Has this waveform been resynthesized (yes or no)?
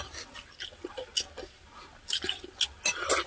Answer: no